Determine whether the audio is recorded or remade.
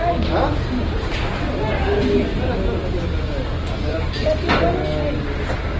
recorded